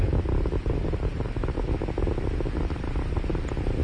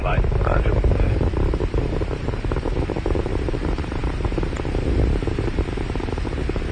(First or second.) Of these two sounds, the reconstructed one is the second